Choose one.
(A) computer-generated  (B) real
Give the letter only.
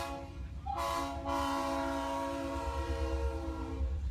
A